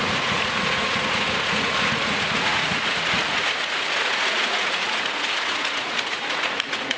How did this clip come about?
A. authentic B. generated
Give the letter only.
B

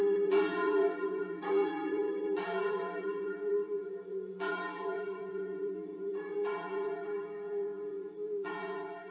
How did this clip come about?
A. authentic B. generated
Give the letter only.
B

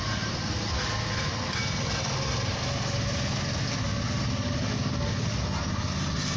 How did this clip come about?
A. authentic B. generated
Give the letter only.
A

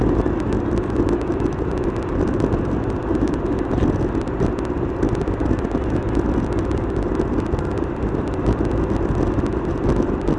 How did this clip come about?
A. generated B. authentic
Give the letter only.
B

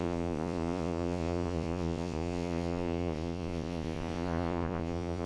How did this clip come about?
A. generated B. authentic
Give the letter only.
A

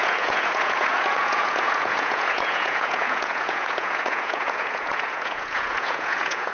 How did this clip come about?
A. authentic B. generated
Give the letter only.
B